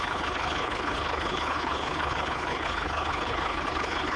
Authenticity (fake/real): fake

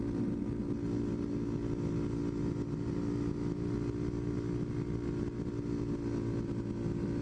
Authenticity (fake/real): real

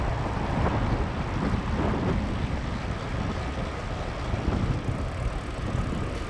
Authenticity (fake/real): real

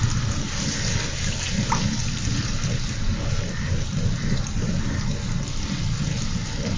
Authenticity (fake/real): real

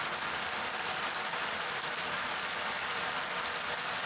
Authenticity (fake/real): real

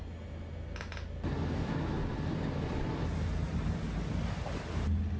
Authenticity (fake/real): real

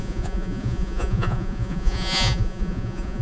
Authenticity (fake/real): fake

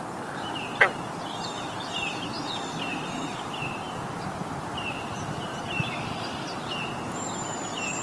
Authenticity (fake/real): real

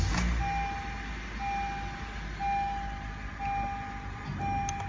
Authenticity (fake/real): real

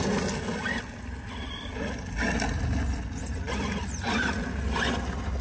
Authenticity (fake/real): real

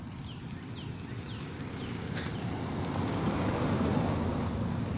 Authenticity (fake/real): real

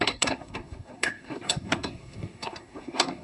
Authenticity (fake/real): fake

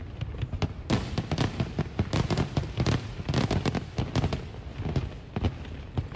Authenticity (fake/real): real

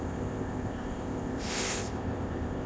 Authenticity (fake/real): fake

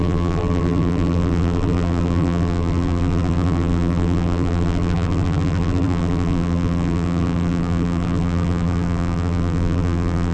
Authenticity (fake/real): fake